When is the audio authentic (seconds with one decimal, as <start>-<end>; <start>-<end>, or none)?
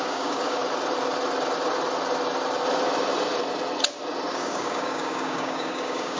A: 0.6-4.3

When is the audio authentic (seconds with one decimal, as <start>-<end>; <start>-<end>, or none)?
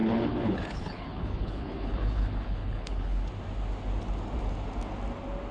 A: 3.3-5.5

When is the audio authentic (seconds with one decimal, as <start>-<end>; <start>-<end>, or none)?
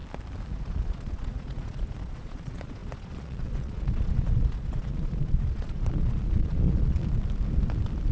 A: 0.0-0.5; 7.0-8.1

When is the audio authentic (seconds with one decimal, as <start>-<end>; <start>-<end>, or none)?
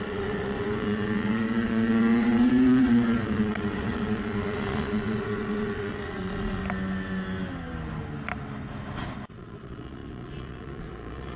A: 6.6-9.3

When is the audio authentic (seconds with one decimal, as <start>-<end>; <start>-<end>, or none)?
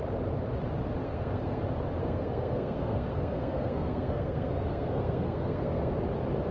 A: 0.0-1.0; 1.6-2.0; 5.9-6.5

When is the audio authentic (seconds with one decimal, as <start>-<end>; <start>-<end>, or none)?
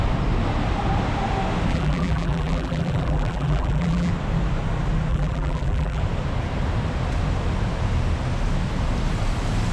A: 0.0-1.7; 4.1-5.1; 6.0-9.7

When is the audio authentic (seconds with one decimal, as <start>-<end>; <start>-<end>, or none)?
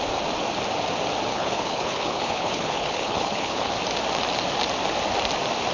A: 0.0-1.3; 3.7-5.7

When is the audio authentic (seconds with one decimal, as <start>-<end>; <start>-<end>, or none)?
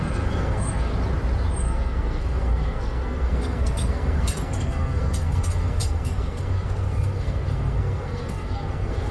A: 0.9-1.6